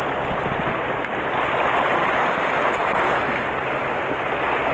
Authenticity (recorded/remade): recorded